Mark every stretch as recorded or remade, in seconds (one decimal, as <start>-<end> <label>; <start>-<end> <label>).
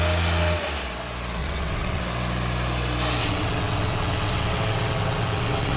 0.0-1.4 recorded; 1.4-2.0 remade; 2.0-3.2 recorded; 3.2-5.8 remade